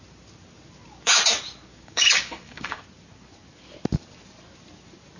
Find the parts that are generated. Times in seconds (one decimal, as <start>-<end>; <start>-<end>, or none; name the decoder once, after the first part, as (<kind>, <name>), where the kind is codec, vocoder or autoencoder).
1.7-2.8 (codec, DAC)